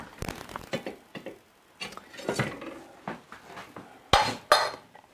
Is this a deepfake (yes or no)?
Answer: no